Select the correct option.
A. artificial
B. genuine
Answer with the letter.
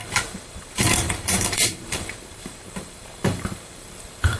A